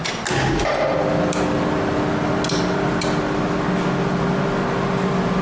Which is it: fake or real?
real